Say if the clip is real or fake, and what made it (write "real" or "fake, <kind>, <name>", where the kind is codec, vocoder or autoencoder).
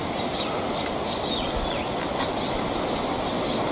real